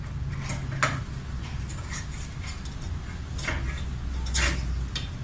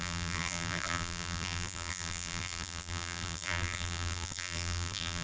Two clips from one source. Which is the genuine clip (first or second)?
first